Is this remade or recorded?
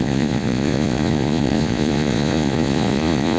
remade